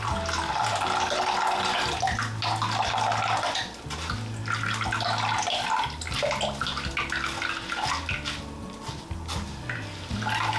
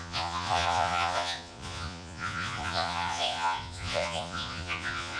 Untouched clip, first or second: first